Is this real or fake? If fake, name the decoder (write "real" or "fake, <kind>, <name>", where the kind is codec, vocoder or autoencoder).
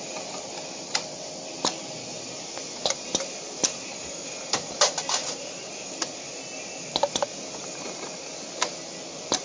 fake, vocoder, BigVGAN v2